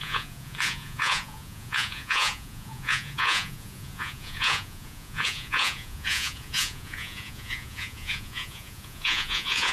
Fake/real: fake